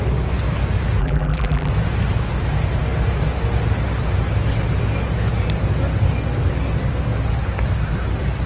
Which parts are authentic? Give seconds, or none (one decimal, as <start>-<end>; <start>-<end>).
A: 0.0-1.0; 1.7-8.5